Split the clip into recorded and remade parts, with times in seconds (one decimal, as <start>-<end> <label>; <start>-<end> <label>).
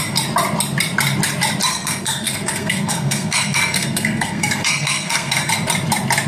0.0-1.7 recorded; 1.7-5.5 remade; 5.5-6.3 recorded